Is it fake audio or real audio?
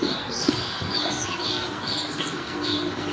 fake